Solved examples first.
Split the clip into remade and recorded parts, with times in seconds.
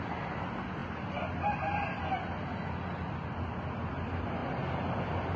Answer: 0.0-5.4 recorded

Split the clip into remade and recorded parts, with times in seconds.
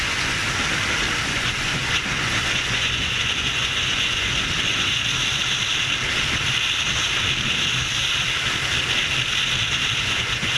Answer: 0.0-0.4 remade; 0.4-1.3 recorded; 1.3-5.0 remade; 5.0-10.0 recorded; 10.0-10.6 remade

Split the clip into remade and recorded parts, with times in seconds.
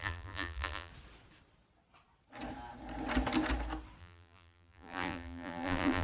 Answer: 0.0-0.9 remade; 0.9-4.0 recorded; 4.0-6.0 remade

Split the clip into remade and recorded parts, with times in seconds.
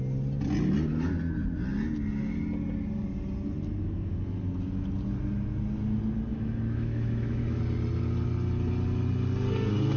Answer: 0.0-6.3 recorded; 6.3-7.6 remade; 7.6-10.0 recorded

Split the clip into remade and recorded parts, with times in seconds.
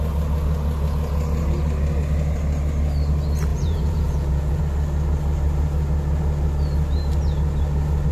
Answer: 0.0-3.5 recorded; 3.5-4.6 remade; 4.6-8.1 recorded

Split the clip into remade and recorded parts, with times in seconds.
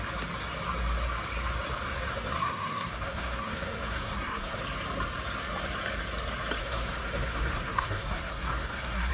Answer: 0.0-2.1 recorded; 2.1-4.6 remade; 4.6-6.6 recorded; 6.6-9.1 remade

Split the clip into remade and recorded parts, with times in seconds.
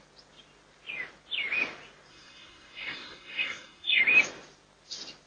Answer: 0.0-2.1 recorded; 2.1-4.0 remade; 4.0-5.3 recorded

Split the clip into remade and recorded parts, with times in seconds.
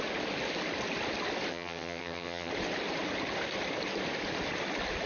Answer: 0.0-1.5 recorded; 1.5-2.5 remade; 2.5-5.1 recorded